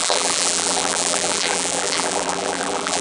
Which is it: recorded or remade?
remade